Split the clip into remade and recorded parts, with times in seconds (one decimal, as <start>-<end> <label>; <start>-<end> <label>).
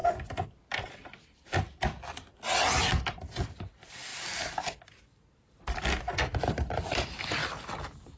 0.0-8.2 recorded